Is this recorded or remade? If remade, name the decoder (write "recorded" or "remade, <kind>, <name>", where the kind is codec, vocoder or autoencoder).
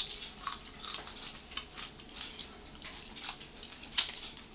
recorded